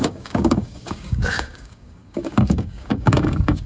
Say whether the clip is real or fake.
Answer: fake